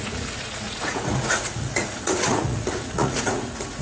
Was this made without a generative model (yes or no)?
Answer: no